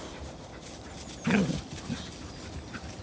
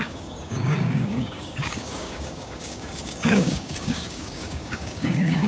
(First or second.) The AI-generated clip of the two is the second